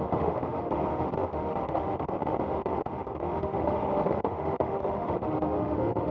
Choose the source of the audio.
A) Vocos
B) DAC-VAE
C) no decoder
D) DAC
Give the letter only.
B